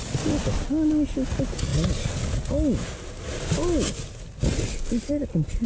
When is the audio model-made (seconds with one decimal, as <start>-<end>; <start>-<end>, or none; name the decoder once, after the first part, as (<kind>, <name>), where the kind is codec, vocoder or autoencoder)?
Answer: none